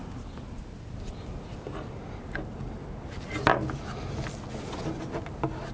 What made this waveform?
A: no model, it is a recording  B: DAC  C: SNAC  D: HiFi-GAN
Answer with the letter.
A